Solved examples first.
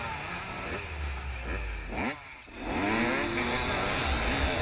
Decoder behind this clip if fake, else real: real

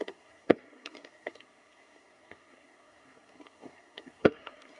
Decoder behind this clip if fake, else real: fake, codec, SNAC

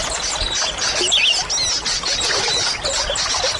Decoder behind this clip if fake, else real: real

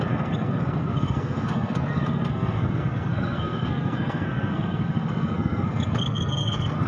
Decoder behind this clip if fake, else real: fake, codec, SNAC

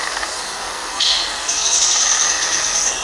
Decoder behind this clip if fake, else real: fake, codec, SNAC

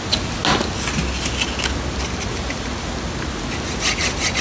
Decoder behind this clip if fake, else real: real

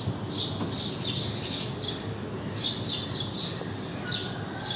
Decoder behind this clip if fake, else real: real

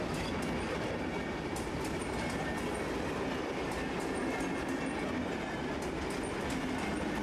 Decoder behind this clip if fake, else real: real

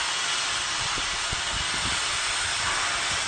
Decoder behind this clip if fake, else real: real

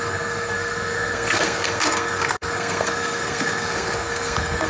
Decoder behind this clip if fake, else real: fake, codec, SNAC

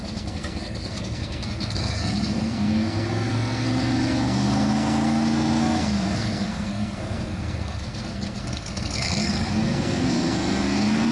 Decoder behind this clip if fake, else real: fake, codec, SNAC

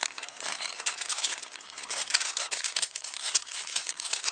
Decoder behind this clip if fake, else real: fake, codec, SNAC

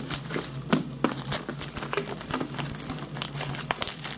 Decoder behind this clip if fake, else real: real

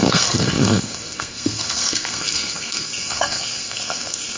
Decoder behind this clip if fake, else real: fake, codec, SNAC